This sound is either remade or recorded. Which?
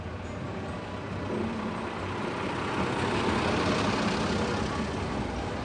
recorded